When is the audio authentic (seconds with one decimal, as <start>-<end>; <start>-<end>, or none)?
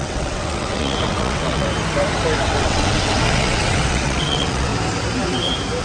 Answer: 1.7-2.4; 4.7-5.8